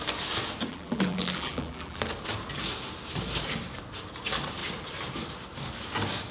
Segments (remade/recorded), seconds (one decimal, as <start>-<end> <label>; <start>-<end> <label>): 0.0-0.7 recorded; 0.7-2.0 remade; 2.0-6.3 recorded